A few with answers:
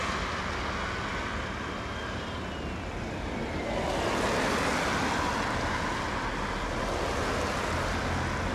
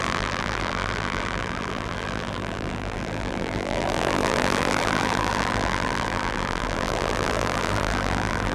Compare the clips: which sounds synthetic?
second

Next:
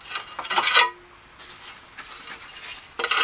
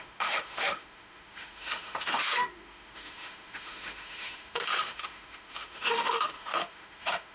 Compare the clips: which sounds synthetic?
second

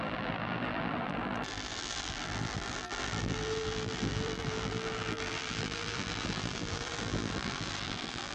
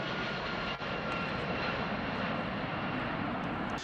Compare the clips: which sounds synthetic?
first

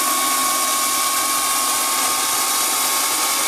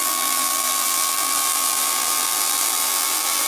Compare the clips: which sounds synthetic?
second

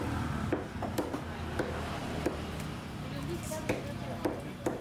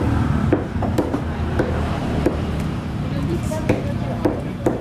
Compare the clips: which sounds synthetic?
second